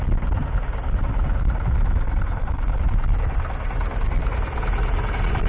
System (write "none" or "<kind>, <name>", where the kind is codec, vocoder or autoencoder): none